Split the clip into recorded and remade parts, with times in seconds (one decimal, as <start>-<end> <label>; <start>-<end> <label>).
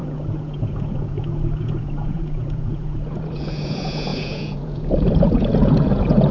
0.0-6.3 remade